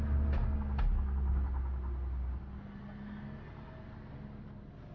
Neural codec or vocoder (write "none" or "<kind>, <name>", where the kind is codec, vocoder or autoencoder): none